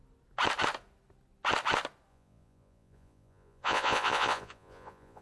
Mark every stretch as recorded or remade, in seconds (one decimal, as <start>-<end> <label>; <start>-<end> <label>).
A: 0.0-2.1 recorded; 2.1-5.2 remade